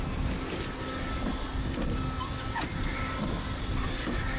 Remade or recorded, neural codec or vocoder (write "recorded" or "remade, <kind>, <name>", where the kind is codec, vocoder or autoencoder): recorded